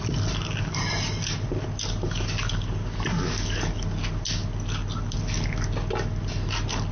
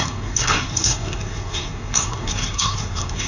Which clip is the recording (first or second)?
first